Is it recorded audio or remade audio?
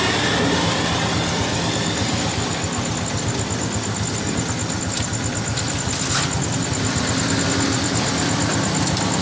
recorded